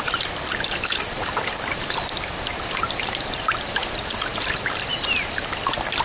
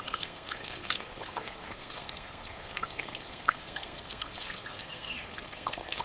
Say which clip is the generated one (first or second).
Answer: second